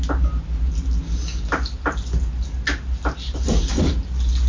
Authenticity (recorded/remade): recorded